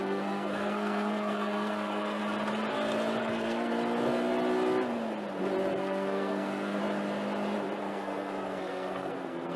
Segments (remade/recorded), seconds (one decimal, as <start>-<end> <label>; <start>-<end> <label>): 0.0-2.2 remade; 2.2-3.2 recorded; 3.2-3.7 remade; 3.7-5.7 recorded; 5.7-6.8 remade; 6.8-7.8 recorded; 7.8-9.6 remade